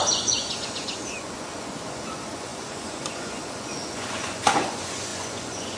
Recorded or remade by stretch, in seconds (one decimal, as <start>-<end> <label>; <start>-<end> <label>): 0.0-5.8 remade